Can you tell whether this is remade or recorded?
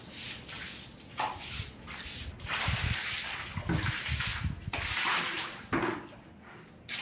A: recorded